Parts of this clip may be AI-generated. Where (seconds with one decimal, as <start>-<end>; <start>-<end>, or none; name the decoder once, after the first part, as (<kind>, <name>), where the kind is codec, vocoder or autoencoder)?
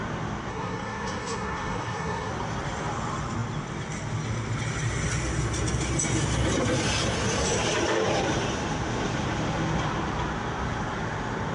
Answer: 0.5-2.3 (codec, SNAC)